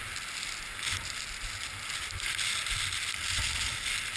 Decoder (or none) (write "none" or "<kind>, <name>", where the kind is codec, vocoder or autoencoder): none